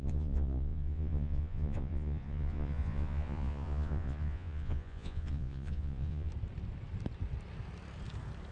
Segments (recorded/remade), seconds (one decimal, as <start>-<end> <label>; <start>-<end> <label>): 0.0-6.3 remade; 6.3-8.5 recorded